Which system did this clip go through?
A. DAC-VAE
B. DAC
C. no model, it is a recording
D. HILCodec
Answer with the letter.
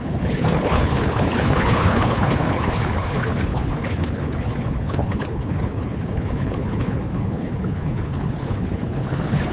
D